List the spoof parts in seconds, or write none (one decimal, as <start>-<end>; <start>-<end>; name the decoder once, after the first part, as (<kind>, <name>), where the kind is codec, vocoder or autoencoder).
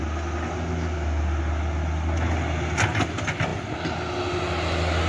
none